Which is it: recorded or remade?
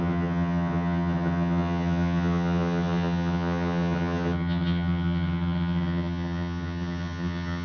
remade